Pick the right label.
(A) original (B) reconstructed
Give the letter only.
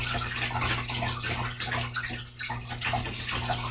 A